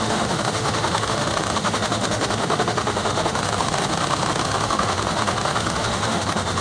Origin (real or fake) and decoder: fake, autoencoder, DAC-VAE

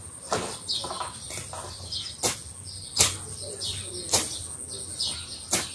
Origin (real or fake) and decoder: real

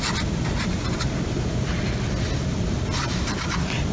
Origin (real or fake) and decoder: fake, vocoder, BigVGAN v2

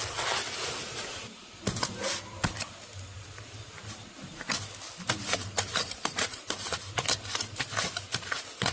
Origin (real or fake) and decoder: real